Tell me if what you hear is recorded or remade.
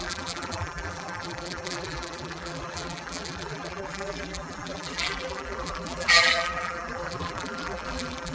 remade